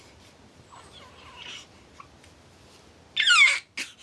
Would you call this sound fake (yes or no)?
no